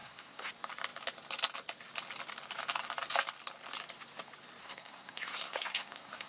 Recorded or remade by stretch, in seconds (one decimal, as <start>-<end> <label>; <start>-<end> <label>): 0.0-0.5 remade; 0.5-4.6 recorded; 4.6-6.3 remade